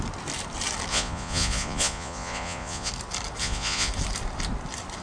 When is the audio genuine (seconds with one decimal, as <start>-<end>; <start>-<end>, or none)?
0.0-0.9; 2.9-3.4; 3.9-5.0